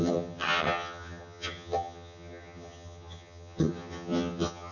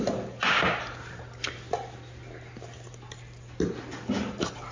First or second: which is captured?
second